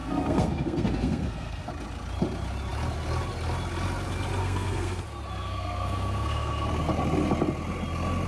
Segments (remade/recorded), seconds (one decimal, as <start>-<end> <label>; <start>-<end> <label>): 0.0-1.7 remade; 1.7-4.4 recorded; 4.4-5.0 remade; 5.0-5.4 recorded; 5.4-6.7 remade; 6.7-8.3 recorded